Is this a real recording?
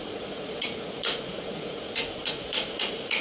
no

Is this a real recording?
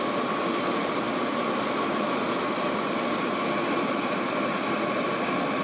yes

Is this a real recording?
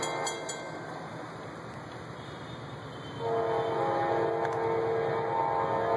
yes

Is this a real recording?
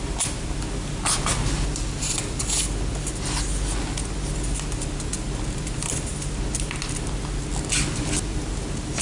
yes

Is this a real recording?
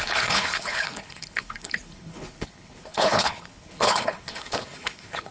no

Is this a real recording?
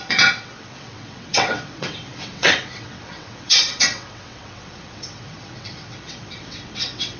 no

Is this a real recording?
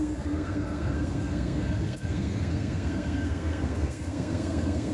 no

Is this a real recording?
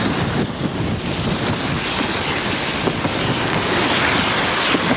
yes